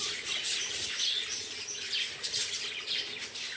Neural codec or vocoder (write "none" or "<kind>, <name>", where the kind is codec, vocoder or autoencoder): none